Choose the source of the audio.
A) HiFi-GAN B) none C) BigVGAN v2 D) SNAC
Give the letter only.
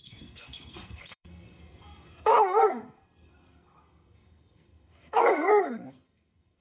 D